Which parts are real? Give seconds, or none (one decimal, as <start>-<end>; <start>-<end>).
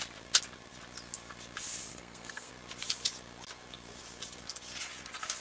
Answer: 0.0-1.9; 2.5-5.4